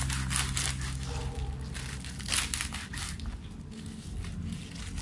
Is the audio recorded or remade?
recorded